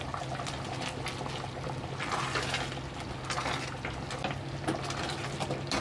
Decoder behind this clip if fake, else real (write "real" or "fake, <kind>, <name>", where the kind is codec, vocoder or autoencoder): real